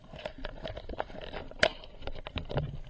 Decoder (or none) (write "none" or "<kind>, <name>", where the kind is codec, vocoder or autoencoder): none